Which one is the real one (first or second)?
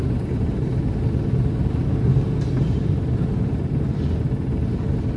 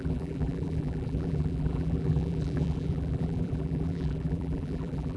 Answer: first